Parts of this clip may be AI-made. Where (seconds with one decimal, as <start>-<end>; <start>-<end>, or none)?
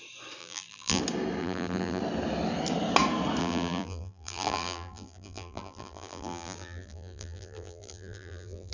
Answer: 0.4-1.0; 1.4-2.0; 3.4-8.7